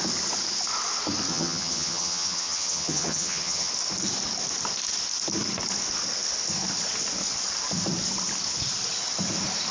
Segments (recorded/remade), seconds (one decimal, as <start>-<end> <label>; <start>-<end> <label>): 0.0-1.3 recorded; 1.3-3.7 remade; 3.7-9.7 recorded